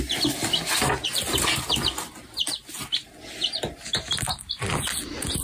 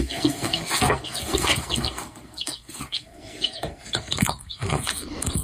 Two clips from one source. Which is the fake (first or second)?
second